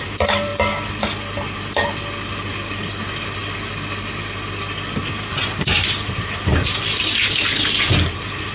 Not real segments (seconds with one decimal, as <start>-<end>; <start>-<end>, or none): 0.0-0.5; 2.5-3.4; 5.0-8.5